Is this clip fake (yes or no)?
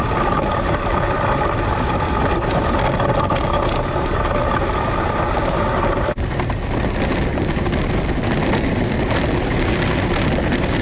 no